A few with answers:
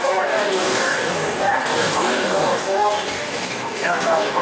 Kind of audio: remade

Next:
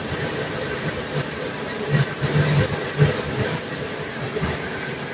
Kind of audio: recorded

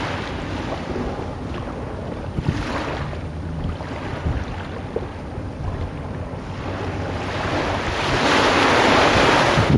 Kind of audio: recorded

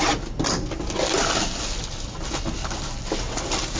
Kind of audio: recorded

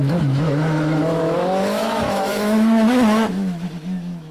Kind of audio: remade